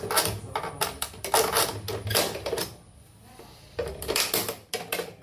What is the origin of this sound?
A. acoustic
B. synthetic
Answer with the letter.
A